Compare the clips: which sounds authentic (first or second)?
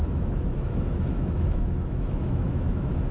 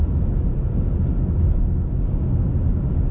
second